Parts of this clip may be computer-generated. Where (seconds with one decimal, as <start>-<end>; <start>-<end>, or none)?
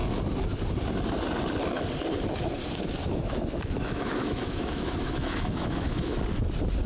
3.0-6.2